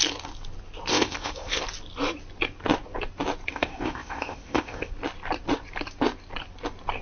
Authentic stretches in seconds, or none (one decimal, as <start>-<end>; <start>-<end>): 0.0-0.9; 1.6-3.5; 4.9-7.0